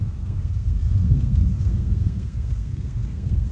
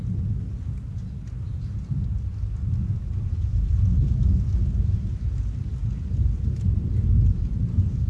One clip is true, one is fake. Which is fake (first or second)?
first